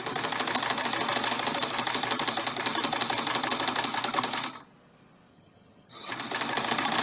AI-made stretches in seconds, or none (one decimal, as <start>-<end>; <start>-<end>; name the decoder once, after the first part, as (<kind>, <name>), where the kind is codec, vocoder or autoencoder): 5.3-6.1 (vocoder, HiFi-GAN)